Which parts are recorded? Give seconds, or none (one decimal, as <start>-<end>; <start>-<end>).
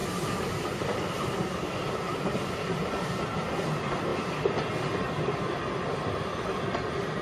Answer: 1.4-4.1; 6.6-7.2